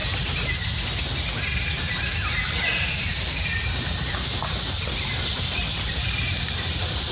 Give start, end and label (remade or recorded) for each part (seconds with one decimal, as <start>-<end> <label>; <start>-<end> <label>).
0.0-0.6 remade; 0.6-2.7 recorded; 2.7-7.1 remade